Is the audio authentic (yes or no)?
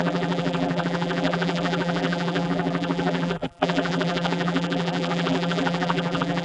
no